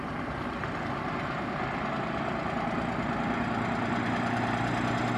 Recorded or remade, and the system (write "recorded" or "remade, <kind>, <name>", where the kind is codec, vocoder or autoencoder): recorded